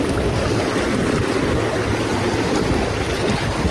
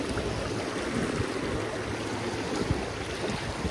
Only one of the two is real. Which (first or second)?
second